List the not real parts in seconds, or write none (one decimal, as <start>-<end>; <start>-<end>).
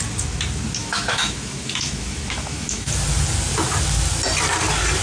0.8-2.9